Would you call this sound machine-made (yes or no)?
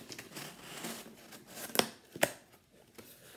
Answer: no